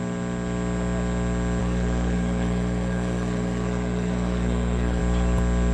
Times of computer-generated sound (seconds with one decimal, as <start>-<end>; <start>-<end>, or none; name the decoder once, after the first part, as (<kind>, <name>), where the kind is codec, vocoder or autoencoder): 1.6-5.0 (codec, SNAC)